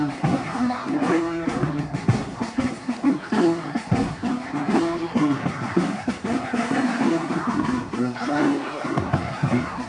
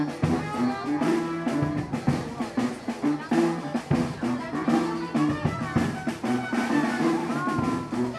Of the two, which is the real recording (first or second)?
second